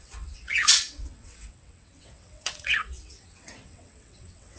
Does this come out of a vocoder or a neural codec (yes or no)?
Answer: yes